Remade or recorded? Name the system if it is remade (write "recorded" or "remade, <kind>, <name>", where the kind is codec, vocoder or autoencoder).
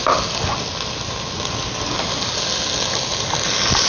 recorded